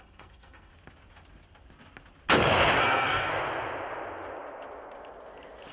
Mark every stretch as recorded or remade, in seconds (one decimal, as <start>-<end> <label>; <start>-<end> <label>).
0.0-0.7 remade; 0.7-2.8 recorded; 2.8-3.3 remade; 3.3-5.7 recorded